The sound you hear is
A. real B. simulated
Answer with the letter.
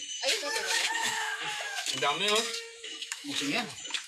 B